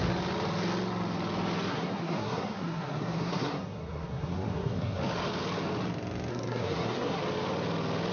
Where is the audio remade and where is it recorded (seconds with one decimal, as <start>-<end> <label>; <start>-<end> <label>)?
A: 0.0-1.7 recorded; 1.7-5.0 remade; 5.0-6.3 recorded; 6.3-7.2 remade; 7.2-8.1 recorded